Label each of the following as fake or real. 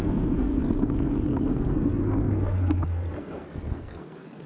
fake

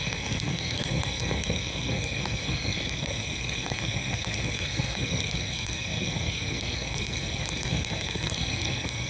fake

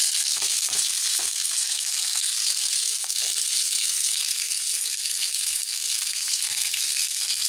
fake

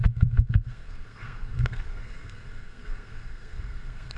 fake